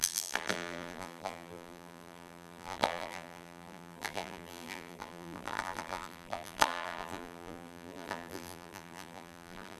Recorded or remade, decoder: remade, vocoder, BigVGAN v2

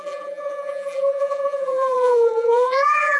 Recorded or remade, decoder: remade, vocoder, BigVGAN v2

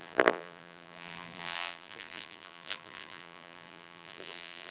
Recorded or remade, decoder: remade, vocoder, BigVGAN v2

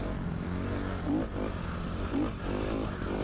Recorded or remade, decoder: recorded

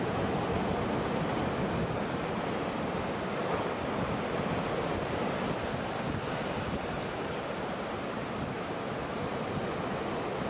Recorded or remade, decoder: recorded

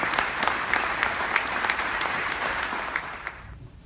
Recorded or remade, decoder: remade, vocoder, BigVGAN v2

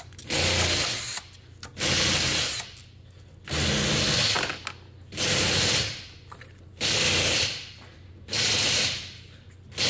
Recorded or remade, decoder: recorded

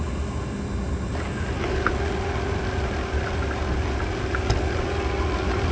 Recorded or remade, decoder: recorded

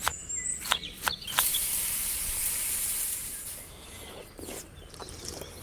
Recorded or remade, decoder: remade, vocoder, BigVGAN v2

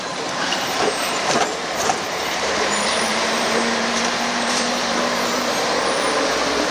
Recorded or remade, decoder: remade, vocoder, BigVGAN v2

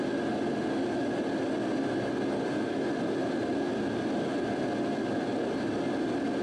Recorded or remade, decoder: recorded